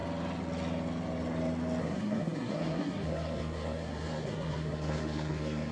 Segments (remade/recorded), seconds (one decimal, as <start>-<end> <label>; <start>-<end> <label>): 0.0-1.8 recorded; 1.8-5.7 remade